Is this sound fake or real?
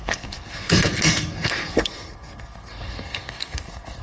fake